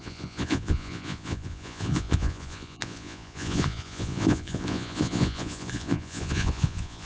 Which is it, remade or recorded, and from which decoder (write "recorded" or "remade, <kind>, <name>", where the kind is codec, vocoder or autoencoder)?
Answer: remade, vocoder, Vocos